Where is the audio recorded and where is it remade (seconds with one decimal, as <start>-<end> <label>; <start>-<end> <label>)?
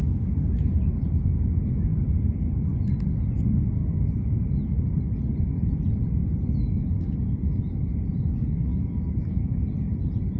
0.0-8.7 recorded; 8.7-9.6 remade; 9.6-10.4 recorded